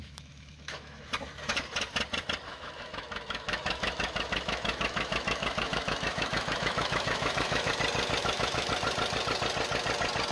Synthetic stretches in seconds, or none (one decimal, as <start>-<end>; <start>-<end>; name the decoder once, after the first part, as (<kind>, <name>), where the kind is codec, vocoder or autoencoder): 0.0-1.1 (autoencoder, DAC-VAE); 2.5-7.7; 8.2-8.7

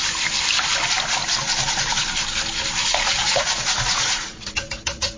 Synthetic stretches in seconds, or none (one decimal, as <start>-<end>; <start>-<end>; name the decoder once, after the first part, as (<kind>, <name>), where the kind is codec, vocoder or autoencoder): 2.8-5.2 (vocoder, Vocos)